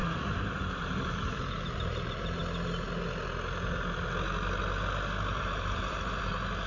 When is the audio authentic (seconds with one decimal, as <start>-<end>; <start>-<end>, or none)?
2.4-5.3; 6.3-6.7

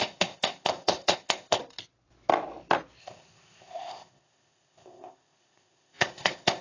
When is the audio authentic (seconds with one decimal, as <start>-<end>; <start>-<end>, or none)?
1.6-3.0

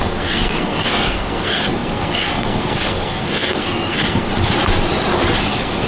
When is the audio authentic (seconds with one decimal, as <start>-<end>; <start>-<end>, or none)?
4.3-5.5

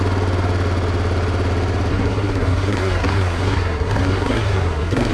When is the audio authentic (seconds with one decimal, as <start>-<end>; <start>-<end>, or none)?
0.0-1.9

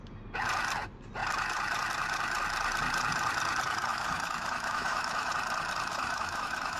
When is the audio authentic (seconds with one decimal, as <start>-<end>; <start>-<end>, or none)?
0.0-3.9; 5.3-5.9

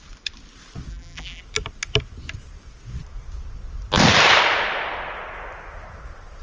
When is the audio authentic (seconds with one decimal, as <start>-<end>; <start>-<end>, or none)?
0.0-0.9; 1.4-6.4